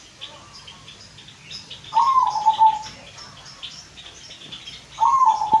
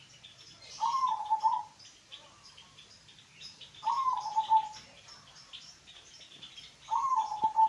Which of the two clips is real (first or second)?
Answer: first